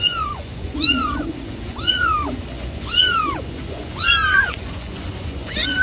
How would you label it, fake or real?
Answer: fake